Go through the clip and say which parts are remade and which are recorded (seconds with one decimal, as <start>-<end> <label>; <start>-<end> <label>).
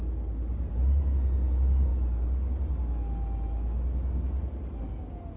0.0-5.4 recorded